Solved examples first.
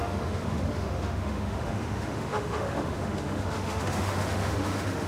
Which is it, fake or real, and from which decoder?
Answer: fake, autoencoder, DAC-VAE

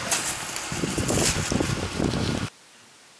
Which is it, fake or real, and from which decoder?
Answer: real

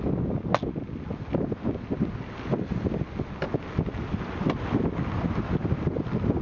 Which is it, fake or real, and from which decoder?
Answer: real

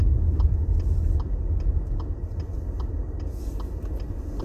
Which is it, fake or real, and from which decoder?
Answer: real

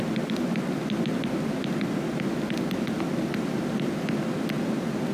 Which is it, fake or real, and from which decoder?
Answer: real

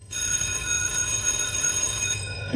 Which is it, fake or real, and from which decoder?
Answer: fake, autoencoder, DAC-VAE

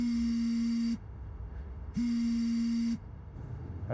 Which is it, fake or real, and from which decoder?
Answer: fake, autoencoder, DAC-VAE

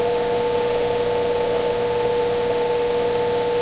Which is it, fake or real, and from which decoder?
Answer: fake, autoencoder, DAC-VAE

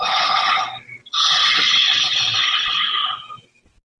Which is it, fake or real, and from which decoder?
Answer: real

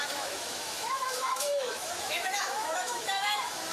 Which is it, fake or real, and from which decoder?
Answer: fake, autoencoder, DAC-VAE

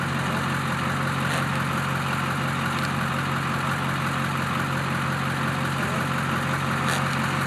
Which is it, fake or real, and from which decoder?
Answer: real